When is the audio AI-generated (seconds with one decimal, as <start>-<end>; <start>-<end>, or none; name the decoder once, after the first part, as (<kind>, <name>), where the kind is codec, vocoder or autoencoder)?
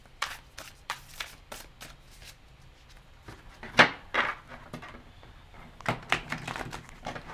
0.0-1.7 (vocoder, BigVGAN v2)